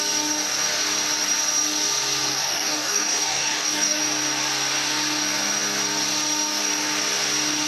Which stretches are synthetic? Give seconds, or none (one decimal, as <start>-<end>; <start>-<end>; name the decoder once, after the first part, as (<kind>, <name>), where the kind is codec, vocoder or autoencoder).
2.3-4.0 (codec, DAC)